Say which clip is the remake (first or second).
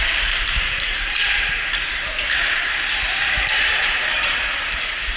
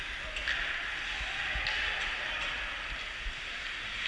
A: first